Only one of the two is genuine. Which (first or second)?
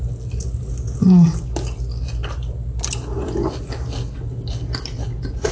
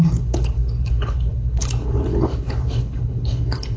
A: first